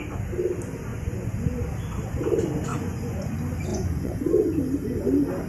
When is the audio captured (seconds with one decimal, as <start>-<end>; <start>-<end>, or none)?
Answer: 0.0-0.9; 1.5-2.7; 3.3-3.7; 4.3-5.5